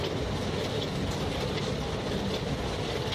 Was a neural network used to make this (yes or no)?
no